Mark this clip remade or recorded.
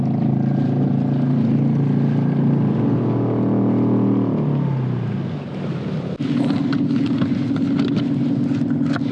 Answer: recorded